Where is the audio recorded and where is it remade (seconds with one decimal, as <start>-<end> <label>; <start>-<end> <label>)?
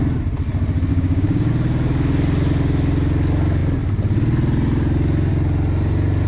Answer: 0.0-0.9 recorded; 0.9-1.5 remade; 1.5-6.3 recorded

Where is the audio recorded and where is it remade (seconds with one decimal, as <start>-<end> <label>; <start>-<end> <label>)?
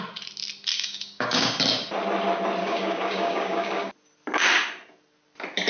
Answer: 0.0-0.7 recorded; 0.7-1.6 remade; 1.6-2.6 recorded; 2.6-3.9 remade; 3.9-5.7 recorded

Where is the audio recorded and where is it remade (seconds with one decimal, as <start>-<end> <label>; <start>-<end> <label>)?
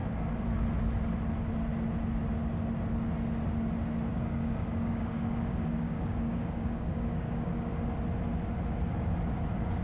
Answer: 0.0-4.1 recorded; 4.1-7.7 remade; 7.7-9.8 recorded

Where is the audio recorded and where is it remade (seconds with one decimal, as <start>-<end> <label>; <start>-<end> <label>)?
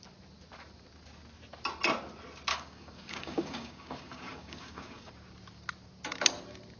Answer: 0.0-2.5 recorded; 2.5-5.1 remade; 5.1-6.8 recorded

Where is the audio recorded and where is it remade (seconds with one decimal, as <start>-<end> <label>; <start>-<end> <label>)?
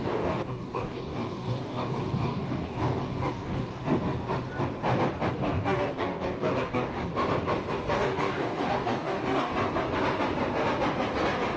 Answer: 0.0-3.8 remade; 3.8-5.3 recorded; 5.3-7.1 remade; 7.1-7.9 recorded; 7.9-9.5 remade; 9.5-11.6 recorded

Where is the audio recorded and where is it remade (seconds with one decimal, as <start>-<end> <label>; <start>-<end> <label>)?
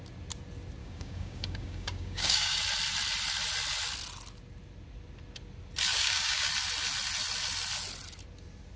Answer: 0.0-0.8 recorded; 0.8-2.6 remade; 2.6-5.9 recorded; 5.9-6.5 remade; 6.5-8.8 recorded